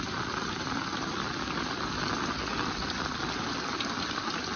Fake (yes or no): no